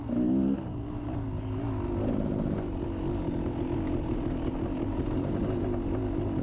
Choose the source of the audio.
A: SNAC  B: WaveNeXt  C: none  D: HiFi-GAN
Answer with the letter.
C